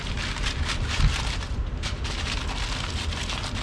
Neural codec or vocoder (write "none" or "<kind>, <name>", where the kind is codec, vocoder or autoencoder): vocoder, BigVGAN v2